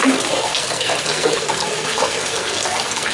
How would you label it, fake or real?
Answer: fake